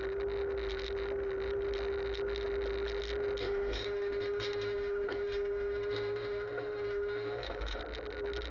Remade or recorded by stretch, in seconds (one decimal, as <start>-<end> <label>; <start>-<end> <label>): 0.0-3.4 recorded; 3.4-7.8 remade; 7.8-8.5 recorded

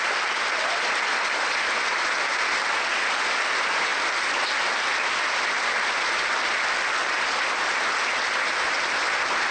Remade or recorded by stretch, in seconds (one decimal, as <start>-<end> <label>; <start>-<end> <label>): 0.0-9.5 recorded

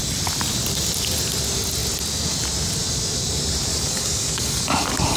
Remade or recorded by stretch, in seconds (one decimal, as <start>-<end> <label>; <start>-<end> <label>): 0.0-3.7 recorded; 3.7-5.2 remade

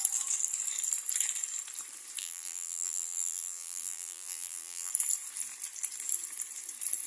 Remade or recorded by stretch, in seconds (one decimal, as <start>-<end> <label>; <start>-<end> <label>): 0.0-2.2 recorded; 2.2-4.9 remade; 4.9-7.1 recorded

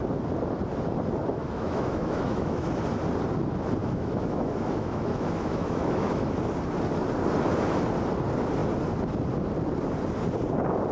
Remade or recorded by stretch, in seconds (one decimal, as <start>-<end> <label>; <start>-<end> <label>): 0.0-1.4 recorded; 1.4-2.7 remade; 2.7-3.8 recorded; 3.8-6.3 remade; 6.3-10.9 recorded

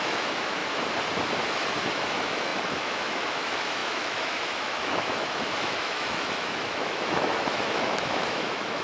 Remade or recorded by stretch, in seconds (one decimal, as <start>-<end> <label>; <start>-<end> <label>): 0.0-0.6 remade; 0.6-1.9 recorded; 1.9-8.8 remade

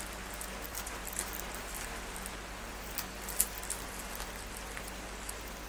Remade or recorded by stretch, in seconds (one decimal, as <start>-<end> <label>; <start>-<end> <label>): 0.0-5.7 recorded

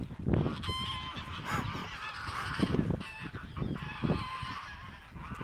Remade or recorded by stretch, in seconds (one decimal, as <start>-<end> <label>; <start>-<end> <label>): 0.0-1.8 recorded; 1.8-5.0 remade; 5.0-5.4 recorded